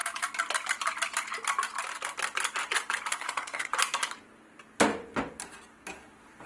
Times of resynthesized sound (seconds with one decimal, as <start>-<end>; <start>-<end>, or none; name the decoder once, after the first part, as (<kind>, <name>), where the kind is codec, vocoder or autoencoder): 3.1-3.7 (codec, SNAC)